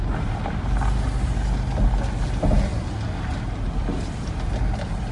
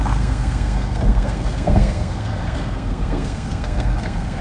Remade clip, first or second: second